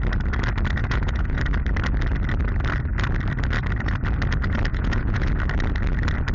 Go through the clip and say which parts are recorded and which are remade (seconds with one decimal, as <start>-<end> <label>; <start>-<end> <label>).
0.0-0.8 recorded; 0.8-1.4 remade; 1.4-4.7 recorded; 4.7-5.3 remade; 5.3-6.3 recorded